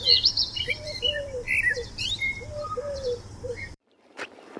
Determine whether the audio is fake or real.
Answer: fake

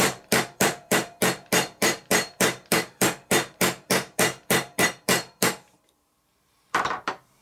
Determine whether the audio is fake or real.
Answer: fake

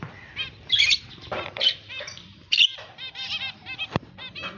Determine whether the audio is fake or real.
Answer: fake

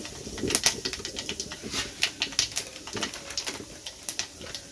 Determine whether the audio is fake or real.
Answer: real